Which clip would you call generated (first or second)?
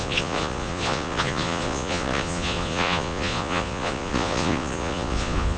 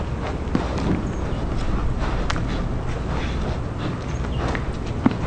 first